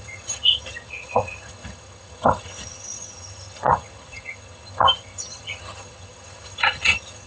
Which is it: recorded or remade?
remade